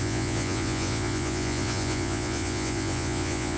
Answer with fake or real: fake